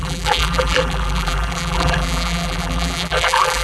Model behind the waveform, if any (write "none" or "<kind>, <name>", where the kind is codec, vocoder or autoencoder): vocoder, BigVGAN v2